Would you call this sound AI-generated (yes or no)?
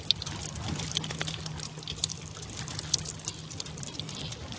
no